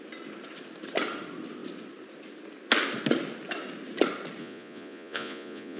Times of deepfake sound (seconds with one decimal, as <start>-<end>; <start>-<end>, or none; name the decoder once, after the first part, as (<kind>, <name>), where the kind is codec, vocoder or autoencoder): 4.4-5.8 (vocoder, Vocos)